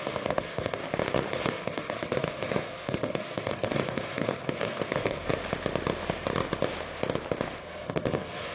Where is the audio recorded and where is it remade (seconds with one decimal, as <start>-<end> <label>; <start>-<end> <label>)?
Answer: 0.0-0.8 remade; 0.8-1.3 recorded; 1.3-5.3 remade; 5.3-7.6 recorded; 7.6-8.5 remade